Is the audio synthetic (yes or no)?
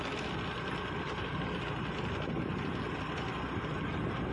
no